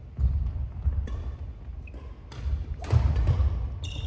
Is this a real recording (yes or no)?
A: yes